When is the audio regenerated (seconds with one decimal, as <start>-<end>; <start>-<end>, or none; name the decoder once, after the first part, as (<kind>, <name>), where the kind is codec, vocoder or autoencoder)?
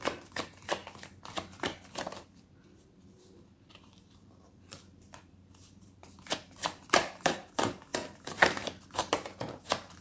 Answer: 0.0-0.8 (vocoder, BigVGAN v2); 2.8-10.0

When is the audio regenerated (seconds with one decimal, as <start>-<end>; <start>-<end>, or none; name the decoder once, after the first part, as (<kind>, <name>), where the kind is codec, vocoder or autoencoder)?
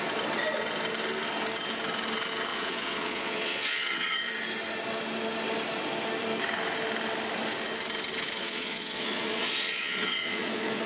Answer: 2.5-4.3 (vocoder, Vocos); 8.4-10.9